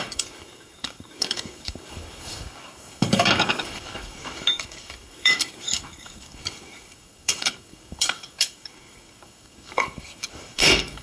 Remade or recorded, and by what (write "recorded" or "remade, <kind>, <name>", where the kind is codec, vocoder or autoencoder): remade, codec, DAC